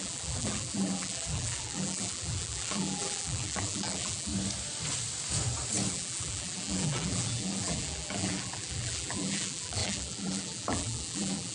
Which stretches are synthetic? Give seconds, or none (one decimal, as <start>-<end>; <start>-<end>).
0.0-4.3; 5.9-11.5